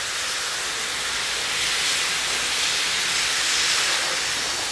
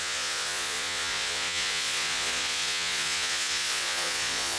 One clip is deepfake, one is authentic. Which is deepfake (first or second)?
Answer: second